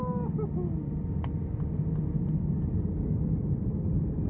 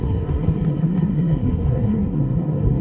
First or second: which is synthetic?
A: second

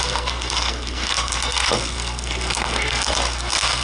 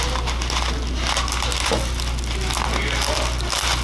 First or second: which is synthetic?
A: first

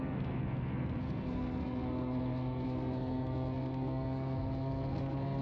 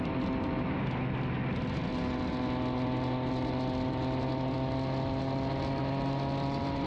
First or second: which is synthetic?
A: first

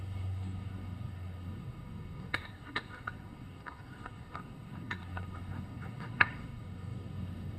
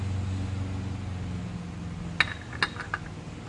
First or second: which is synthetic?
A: first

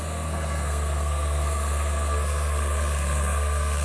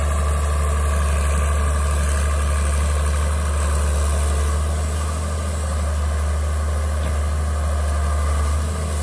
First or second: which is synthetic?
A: first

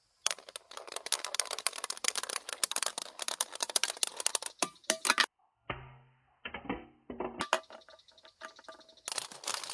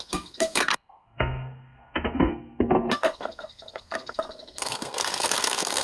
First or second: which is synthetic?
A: second